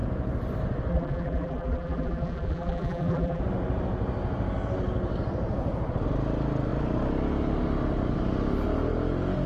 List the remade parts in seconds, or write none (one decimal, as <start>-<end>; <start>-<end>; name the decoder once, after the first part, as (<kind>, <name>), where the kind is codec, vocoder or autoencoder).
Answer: 0.9-3.4 (vocoder, BigVGAN v2)